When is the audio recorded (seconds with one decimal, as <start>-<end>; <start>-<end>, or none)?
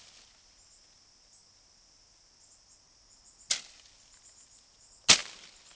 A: 0.0-5.7